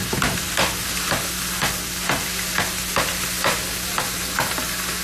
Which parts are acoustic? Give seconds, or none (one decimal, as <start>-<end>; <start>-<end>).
0.0-5.0